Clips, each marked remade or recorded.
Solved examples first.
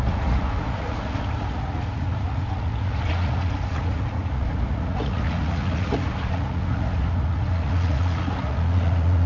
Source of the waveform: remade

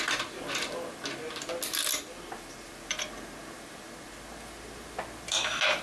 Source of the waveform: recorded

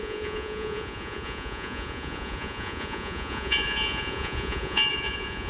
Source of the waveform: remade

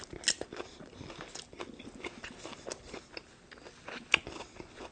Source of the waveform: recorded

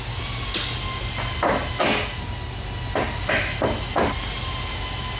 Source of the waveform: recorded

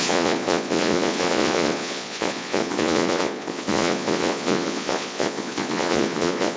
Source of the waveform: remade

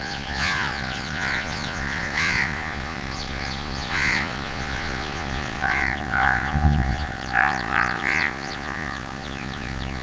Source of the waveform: remade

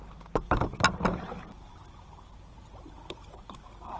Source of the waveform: recorded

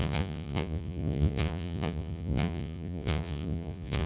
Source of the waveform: remade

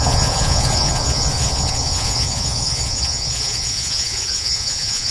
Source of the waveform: remade